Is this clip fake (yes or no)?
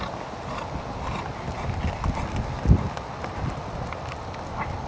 no